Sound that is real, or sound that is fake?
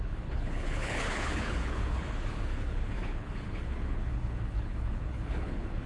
fake